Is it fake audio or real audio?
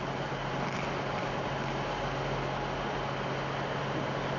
real